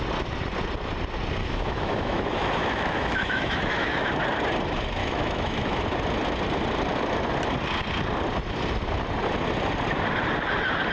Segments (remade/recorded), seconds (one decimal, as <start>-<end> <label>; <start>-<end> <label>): 0.0-1.4 recorded; 1.4-4.2 remade; 4.2-5.0 recorded; 5.0-5.8 remade; 5.8-10.9 recorded